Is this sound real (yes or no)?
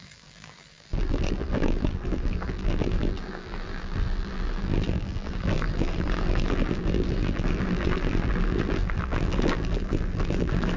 no